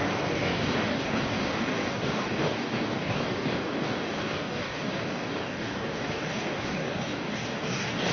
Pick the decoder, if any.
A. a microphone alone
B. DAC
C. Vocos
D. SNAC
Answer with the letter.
B